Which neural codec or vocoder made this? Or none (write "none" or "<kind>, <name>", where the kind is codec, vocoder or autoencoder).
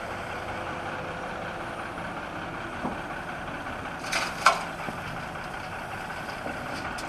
vocoder, BigVGAN v2